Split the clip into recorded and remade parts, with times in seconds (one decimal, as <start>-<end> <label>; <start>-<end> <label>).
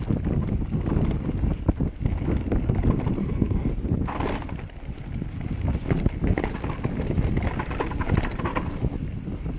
0.0-3.2 recorded; 3.2-3.7 remade; 3.7-9.6 recorded